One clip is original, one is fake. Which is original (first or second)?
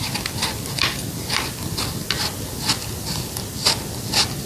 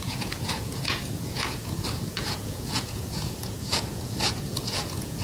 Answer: first